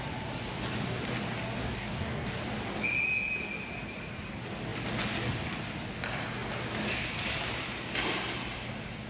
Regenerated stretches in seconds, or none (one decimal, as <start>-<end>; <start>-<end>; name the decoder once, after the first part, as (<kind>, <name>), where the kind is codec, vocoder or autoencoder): 1.6-2.3 (codec, DAC)